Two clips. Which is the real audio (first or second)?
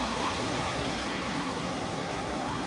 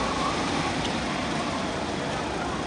second